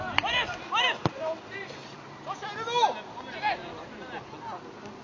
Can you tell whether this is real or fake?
real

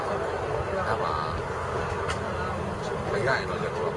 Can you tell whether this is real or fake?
real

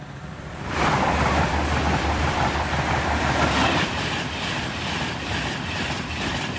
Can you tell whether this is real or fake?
fake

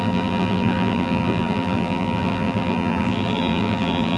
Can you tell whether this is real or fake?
fake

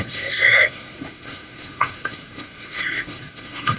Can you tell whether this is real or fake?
fake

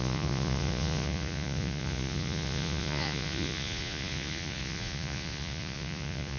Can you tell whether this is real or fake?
fake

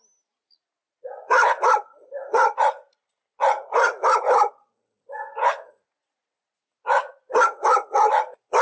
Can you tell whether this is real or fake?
real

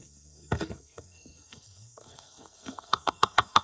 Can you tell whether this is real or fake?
fake